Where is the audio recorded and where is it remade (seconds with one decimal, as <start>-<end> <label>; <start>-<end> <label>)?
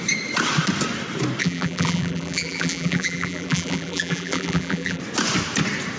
0.0-1.4 recorded; 1.4-5.0 remade; 5.0-6.0 recorded